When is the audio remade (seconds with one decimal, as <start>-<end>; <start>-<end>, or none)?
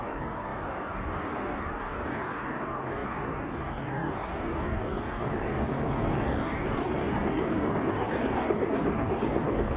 0.0-9.8